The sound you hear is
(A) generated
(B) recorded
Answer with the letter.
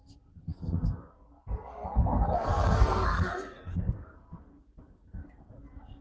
A